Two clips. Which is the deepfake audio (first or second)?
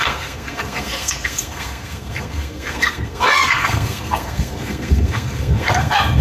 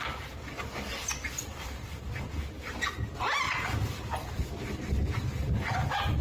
first